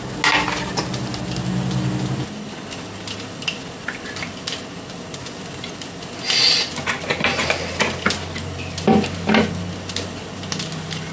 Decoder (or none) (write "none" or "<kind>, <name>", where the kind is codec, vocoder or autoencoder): none